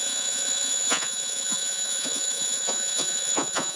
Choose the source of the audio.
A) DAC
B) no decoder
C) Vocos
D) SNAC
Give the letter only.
C